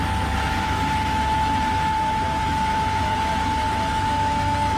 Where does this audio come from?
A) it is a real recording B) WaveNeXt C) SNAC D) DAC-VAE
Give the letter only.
D